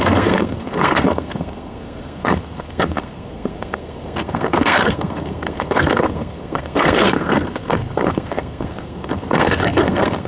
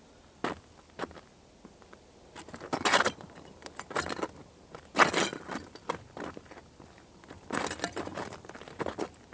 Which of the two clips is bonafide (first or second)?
second